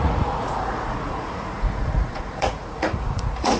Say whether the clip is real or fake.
fake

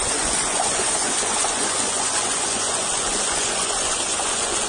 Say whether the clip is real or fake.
fake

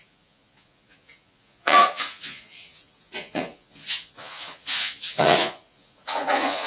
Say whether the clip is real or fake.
fake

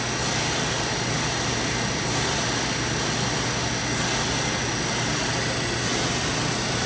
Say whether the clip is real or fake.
real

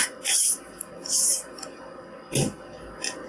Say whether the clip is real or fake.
real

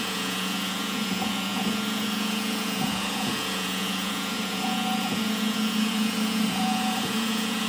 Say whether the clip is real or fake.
fake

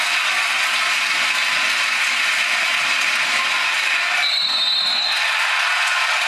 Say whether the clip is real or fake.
real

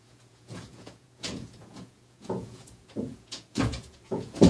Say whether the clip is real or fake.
fake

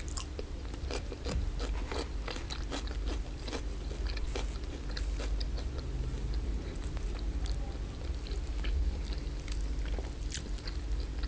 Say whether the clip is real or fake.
real